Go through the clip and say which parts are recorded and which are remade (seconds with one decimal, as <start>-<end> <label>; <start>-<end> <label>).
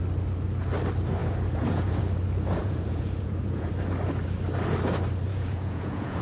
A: 0.0-1.2 recorded; 1.2-2.0 remade; 2.0-2.6 recorded; 2.6-3.7 remade; 3.7-5.3 recorded; 5.3-6.2 remade